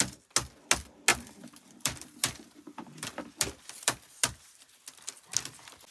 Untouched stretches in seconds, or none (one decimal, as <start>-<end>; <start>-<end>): 0.0-1.1; 4.6-5.9